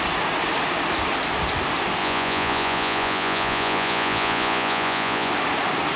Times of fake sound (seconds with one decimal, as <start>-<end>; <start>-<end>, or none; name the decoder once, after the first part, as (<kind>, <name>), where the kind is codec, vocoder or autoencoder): 2.0-5.3 (vocoder, Vocos)